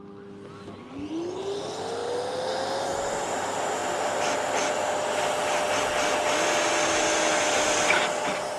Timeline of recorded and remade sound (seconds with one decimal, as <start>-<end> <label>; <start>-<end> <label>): 0.0-8.6 recorded